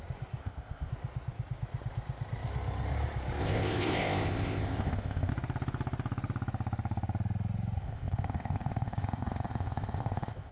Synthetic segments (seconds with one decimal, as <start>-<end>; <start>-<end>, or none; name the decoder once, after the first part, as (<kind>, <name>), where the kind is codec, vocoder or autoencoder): 0.4-0.9 (codec, ZipCodec); 3.4-5.3; 7.8-10.5